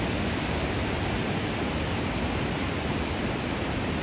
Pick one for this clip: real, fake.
real